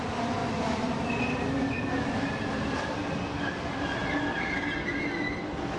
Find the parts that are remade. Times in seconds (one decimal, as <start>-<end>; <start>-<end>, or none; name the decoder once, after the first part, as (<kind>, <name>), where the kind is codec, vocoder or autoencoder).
none